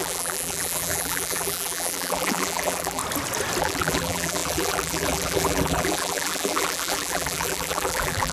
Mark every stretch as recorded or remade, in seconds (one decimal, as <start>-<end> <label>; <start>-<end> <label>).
0.0-3.0 remade; 3.0-3.6 recorded; 3.6-8.3 remade